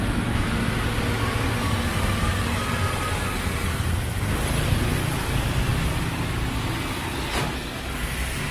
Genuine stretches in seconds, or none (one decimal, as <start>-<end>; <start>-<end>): 0.0-8.5